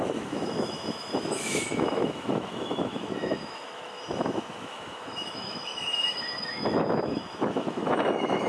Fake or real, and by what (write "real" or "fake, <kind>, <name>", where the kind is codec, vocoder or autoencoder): fake, autoencoder, DAC-VAE